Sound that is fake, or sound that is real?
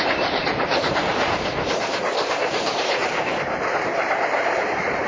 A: fake